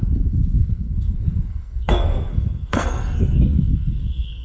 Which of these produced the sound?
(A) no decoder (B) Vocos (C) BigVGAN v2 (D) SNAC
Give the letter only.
D